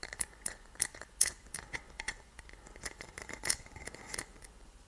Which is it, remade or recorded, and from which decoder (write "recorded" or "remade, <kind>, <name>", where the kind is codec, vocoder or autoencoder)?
remade, vocoder, Vocos